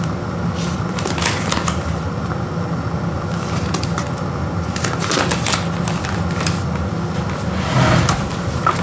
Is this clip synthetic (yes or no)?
no